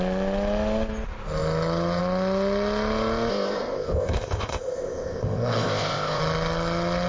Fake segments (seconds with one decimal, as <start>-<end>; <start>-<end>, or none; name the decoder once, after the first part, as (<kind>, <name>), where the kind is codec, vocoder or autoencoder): 3.3-6.2 (codec, ZipCodec)